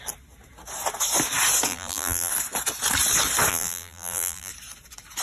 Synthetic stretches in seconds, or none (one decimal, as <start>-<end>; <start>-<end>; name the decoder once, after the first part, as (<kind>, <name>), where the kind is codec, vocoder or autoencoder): 1.7-2.3 (vocoder, BigVGAN v2); 3.5-4.5